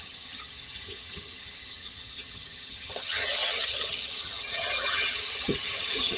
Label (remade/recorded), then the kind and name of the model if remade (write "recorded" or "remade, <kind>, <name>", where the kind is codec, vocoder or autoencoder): remade, vocoder, HiFi-GAN